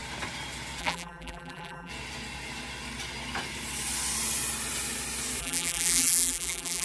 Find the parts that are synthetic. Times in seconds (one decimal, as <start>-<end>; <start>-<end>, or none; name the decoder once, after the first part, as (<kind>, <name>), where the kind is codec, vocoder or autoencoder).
0.8-1.9 (vocoder, BigVGAN v2); 5.4-6.8